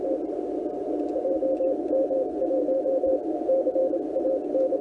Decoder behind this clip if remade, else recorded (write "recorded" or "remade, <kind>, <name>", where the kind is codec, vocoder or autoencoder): remade, vocoder, BigVGAN v2